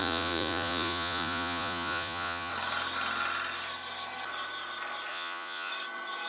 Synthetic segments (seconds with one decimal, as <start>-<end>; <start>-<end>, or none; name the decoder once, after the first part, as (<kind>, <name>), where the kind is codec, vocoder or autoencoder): 0.0-2.5 (vocoder, Vocos); 5.1-5.7